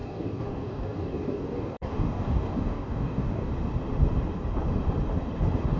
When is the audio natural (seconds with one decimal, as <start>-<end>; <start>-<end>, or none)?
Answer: 3.5-5.8